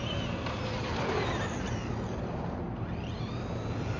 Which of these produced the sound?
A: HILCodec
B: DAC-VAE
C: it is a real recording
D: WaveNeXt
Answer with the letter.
C